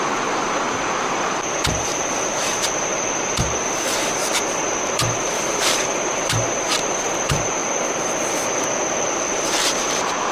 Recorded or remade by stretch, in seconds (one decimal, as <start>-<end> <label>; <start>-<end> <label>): 0.0-7.6 remade; 7.6-9.1 recorded; 9.1-10.3 remade